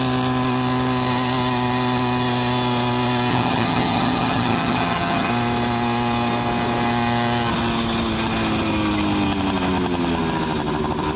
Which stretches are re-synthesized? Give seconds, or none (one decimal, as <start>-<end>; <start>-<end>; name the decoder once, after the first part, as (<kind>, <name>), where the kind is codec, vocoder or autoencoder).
3.3-5.3 (vocoder, HiFi-GAN)